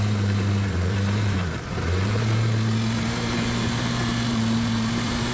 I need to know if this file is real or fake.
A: fake